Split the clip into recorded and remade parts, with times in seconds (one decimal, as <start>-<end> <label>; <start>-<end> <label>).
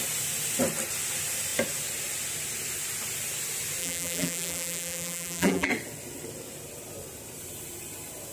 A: 0.0-3.8 recorded; 3.8-5.7 remade; 5.7-8.3 recorded